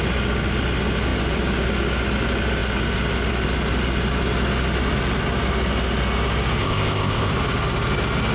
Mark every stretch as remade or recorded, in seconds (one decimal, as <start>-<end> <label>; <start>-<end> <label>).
0.0-6.6 recorded; 6.6-7.3 remade; 7.3-8.3 recorded